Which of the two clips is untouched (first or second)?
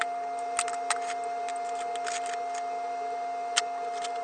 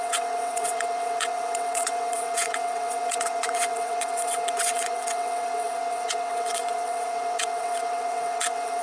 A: first